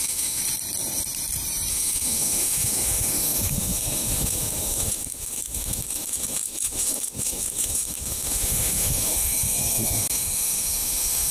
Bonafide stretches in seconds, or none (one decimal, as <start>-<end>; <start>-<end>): 0.4-1.7